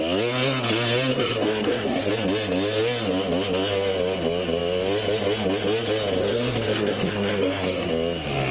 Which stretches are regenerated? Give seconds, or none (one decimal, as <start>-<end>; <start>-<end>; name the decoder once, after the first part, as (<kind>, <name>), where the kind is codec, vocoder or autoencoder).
1.1-2.1 (codec, SNAC); 6.2-7.9